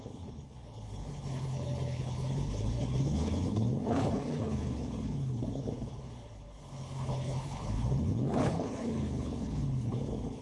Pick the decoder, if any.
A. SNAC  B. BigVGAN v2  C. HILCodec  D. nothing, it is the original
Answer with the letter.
C